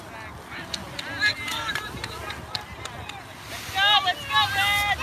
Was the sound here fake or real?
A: real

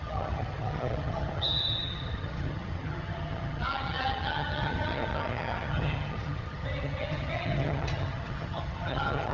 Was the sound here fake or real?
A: fake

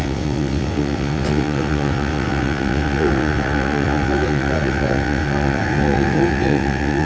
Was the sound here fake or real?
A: fake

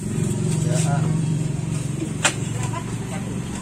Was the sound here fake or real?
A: fake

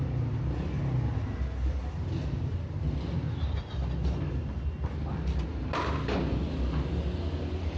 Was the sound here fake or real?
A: real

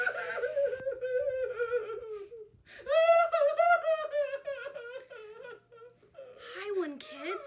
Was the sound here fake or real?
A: real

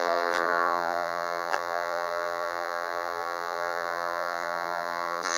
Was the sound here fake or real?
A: fake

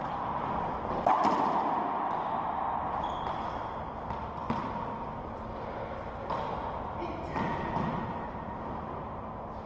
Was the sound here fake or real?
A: real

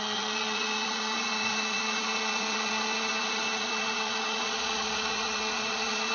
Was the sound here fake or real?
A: fake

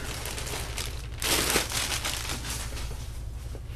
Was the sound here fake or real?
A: real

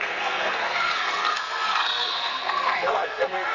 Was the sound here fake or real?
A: fake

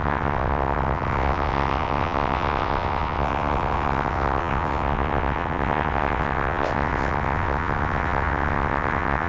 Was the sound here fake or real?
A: fake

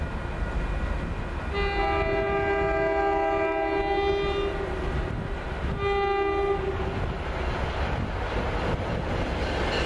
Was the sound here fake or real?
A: real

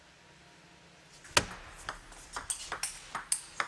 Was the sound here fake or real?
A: real